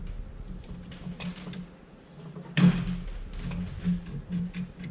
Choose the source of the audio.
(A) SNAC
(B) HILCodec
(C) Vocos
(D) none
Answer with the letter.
D